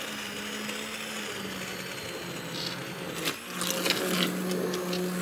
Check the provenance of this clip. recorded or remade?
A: recorded